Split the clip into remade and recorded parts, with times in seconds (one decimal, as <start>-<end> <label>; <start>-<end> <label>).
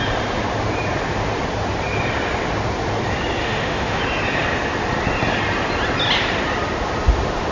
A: 0.0-3.4 recorded; 3.4-4.0 remade; 4.0-7.5 recorded